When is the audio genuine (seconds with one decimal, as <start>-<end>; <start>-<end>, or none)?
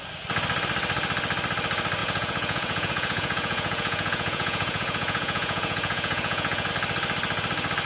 0.0-2.0; 6.7-7.9